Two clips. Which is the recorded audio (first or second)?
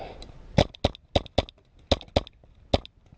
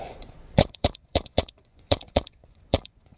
first